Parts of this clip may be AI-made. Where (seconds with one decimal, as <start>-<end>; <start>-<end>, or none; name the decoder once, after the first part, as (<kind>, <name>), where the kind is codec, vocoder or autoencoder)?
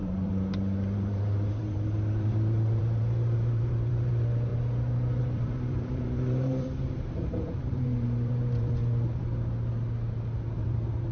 0.0-4.5 (vocoder, BigVGAN v2); 5.2-8.8; 10.6-11.1